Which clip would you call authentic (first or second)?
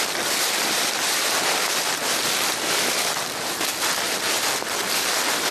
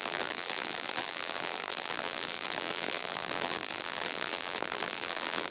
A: first